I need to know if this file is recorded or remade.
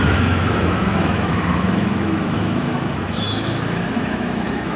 remade